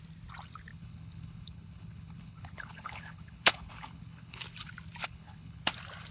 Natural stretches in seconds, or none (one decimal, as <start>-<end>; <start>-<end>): 0.0-0.7; 4.4-5.0; 5.6-6.1